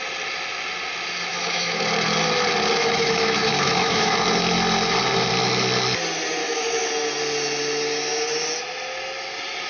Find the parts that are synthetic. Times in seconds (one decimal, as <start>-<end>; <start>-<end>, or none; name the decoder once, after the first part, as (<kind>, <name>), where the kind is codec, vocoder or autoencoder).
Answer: 1.3-1.8 (autoencoder, DAC-VAE); 2.8-4.1; 6.4-6.9